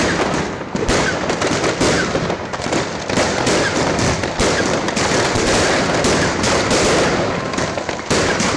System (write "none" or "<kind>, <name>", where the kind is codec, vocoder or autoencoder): vocoder, BigVGAN v2